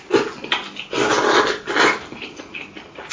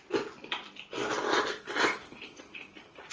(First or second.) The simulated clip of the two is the second